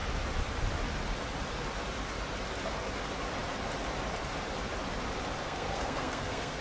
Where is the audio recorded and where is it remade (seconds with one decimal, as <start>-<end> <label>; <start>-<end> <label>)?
0.0-5.4 recorded; 5.4-6.6 remade